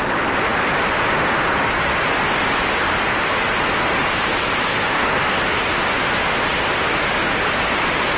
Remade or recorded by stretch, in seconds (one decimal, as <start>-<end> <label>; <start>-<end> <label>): 0.0-8.2 recorded

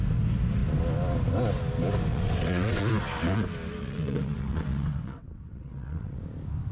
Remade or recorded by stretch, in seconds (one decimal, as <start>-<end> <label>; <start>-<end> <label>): 0.0-2.1 recorded; 2.1-2.9 remade; 2.9-3.8 recorded; 3.8-6.2 remade; 6.2-6.7 recorded

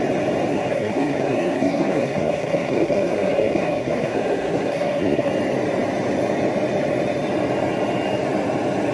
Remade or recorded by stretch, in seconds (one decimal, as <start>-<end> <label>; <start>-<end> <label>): 0.0-0.5 recorded; 0.5-5.3 remade; 5.3-8.9 recorded

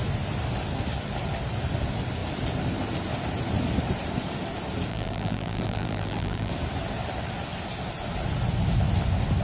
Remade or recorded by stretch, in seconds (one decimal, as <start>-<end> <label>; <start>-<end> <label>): 0.0-4.9 recorded; 4.9-6.5 remade; 6.5-9.4 recorded

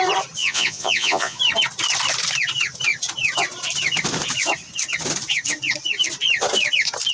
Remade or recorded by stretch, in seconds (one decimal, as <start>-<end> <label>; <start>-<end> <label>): 0.0-0.4 recorded; 0.4-1.4 remade; 1.4-7.1 recorded

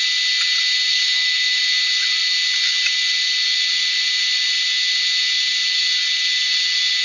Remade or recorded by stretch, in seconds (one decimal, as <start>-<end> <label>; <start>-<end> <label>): 0.0-0.9 recorded; 0.9-1.6 remade; 1.6-7.0 recorded

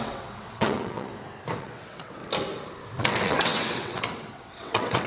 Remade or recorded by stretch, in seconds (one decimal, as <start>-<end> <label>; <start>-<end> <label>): 0.0-1.1 remade; 1.1-1.6 recorded; 1.6-2.2 remade; 2.2-3.0 recorded; 3.0-5.1 remade